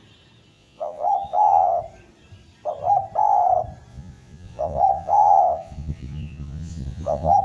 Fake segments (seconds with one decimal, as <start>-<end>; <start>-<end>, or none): 0.5-1.8; 3.9-7.4